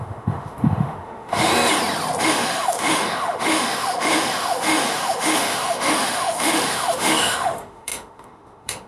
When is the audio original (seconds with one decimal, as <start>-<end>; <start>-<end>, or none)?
1.5-2.2